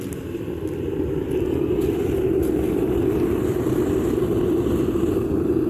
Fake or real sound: real